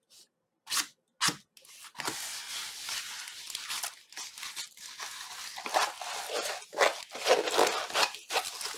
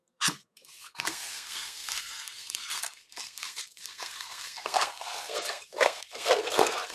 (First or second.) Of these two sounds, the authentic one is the first